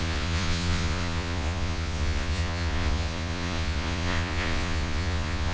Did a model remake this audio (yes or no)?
yes